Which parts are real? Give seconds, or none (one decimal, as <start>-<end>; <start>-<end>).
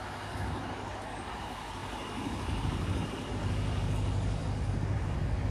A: none